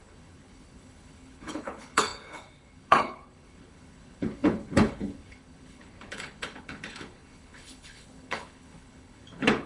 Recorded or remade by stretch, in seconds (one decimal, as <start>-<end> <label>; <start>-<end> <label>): 0.0-9.7 remade